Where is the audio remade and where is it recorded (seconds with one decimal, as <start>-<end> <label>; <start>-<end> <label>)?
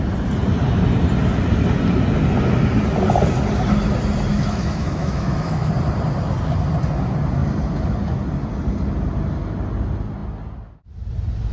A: 0.0-4.3 recorded; 4.3-5.7 remade; 5.7-11.5 recorded